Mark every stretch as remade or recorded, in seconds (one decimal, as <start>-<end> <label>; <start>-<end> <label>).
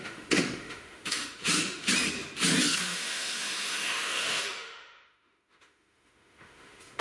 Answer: 0.0-1.9 remade; 1.9-2.6 recorded; 2.6-7.0 remade